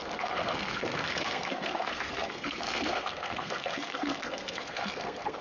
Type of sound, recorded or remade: remade